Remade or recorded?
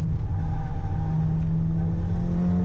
recorded